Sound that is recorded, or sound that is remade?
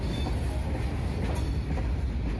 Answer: recorded